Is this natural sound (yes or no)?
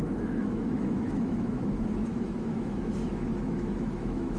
no